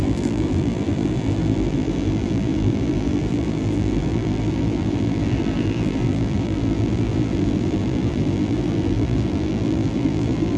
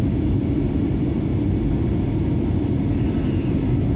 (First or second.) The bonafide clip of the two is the second